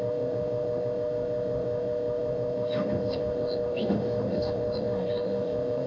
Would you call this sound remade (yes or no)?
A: yes